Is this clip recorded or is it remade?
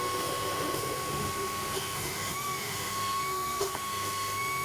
remade